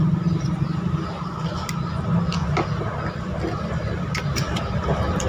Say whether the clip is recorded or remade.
recorded